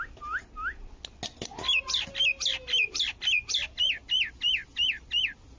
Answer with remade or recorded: recorded